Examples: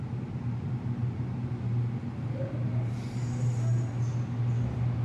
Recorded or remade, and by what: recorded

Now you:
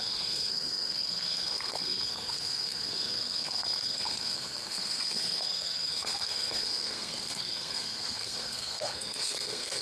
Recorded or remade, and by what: remade, codec, SNAC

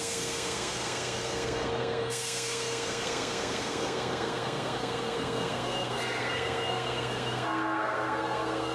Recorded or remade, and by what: remade, codec, SNAC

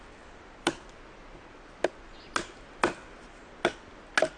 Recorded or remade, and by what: recorded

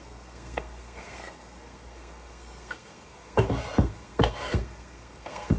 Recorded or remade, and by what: remade, codec, SNAC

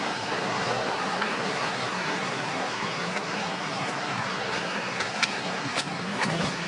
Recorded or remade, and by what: remade, codec, SNAC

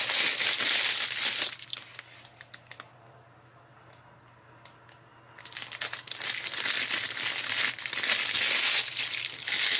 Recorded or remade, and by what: recorded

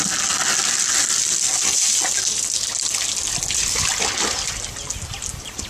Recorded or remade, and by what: recorded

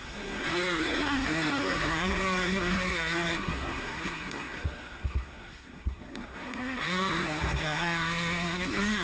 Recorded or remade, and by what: remade, codec, SNAC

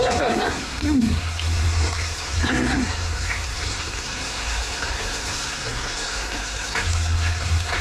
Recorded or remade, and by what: remade, codec, SNAC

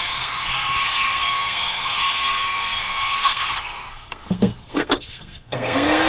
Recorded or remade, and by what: remade, codec, SNAC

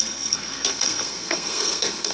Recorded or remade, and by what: remade, codec, SNAC